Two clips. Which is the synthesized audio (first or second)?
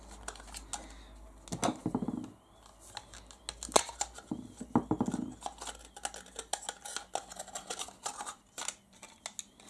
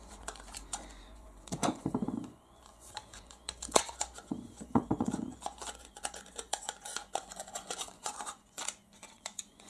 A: second